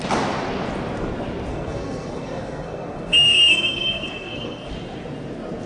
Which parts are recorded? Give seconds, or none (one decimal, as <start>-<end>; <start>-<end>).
0.0-1.5; 4.7-5.7